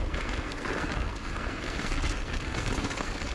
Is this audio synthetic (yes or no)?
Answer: yes